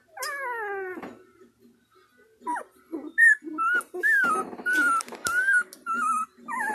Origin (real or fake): real